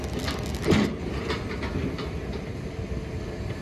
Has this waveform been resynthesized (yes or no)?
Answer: no